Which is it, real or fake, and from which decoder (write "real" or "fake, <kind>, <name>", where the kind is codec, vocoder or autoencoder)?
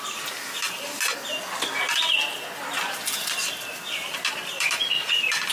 real